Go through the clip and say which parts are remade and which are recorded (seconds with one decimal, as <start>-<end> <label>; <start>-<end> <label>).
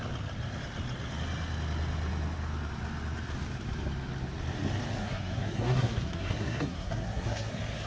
0.0-5.0 recorded; 5.0-7.5 remade; 7.5-7.9 recorded